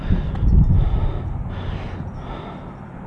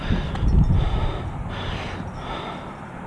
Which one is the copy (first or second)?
second